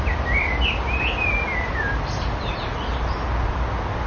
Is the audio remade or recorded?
recorded